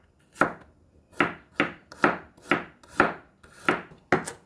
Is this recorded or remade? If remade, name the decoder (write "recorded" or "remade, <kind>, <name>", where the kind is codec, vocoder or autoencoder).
recorded